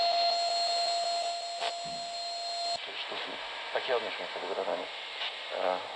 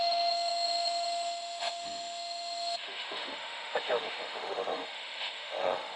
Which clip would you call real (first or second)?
first